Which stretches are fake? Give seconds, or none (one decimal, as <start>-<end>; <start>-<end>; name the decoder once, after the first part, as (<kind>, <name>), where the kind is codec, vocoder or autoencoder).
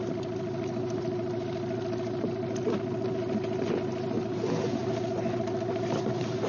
none